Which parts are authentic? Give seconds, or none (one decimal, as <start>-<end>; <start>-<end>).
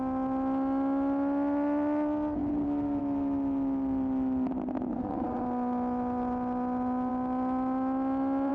0.0-4.9; 5.4-8.5